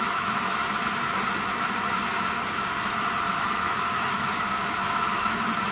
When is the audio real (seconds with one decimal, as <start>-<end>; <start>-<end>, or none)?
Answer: 0.6-3.3